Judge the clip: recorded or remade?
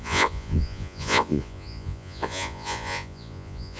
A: remade